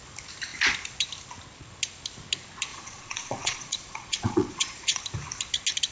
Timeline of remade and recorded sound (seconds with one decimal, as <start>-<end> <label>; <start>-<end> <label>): 0.0-2.7 recorded; 2.7-5.0 remade; 5.0-5.9 recorded